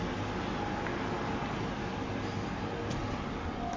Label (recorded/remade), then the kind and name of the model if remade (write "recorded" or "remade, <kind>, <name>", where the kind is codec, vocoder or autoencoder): recorded